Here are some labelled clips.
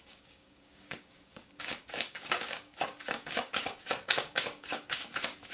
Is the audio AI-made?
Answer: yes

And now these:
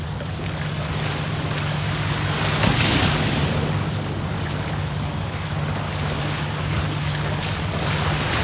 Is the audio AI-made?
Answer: yes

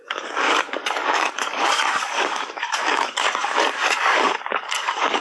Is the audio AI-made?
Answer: yes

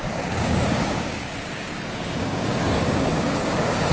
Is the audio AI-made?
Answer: yes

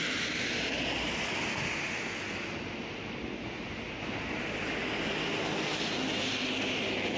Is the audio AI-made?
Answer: no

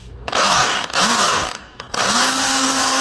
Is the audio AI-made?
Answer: yes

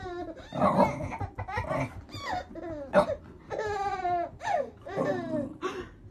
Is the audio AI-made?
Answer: no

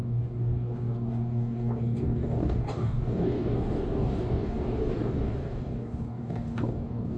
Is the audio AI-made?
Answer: yes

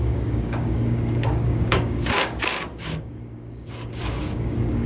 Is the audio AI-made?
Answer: yes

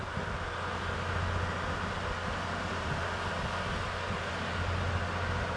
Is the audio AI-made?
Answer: no